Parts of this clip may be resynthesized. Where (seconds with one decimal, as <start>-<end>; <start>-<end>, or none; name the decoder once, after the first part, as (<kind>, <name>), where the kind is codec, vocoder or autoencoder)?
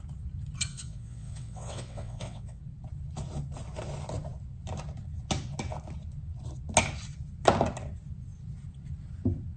0.7-2.6 (vocoder, WaveNeXt)